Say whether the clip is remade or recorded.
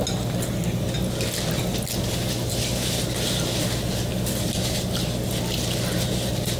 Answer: recorded